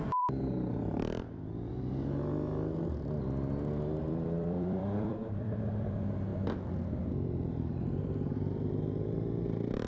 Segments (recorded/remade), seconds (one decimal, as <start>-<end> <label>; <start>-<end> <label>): 0.0-1.7 remade; 1.7-4.0 recorded; 4.0-9.9 remade